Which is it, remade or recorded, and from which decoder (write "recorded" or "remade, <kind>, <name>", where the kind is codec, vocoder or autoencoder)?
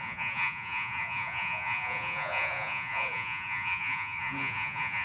remade, vocoder, Vocos